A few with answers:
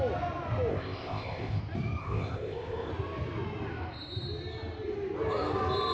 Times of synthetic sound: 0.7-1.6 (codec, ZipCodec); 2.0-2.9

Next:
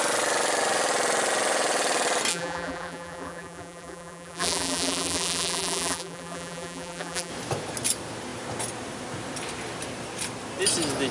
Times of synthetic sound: 2.3-7.3 (vocoder, BigVGAN v2)

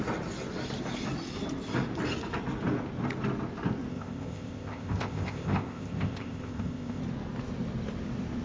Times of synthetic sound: 3.9-7.0 (codec, ZipCodec)

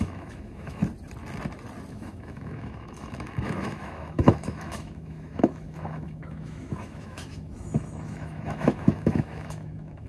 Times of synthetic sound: 0.0-0.8 (autoencoder, DAC-VAE); 1.9-10.1

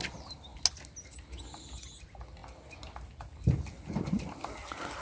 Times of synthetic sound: none

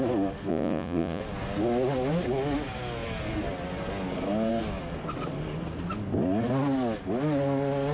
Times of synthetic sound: 0.5-1.2 (vocoder, Vocos)